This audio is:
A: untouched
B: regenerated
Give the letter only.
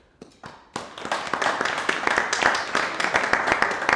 A